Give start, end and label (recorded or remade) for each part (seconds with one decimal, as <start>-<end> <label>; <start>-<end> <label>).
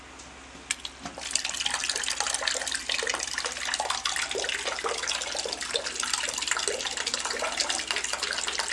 0.0-8.7 recorded